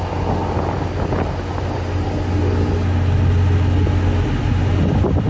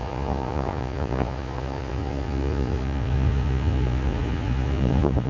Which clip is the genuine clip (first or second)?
first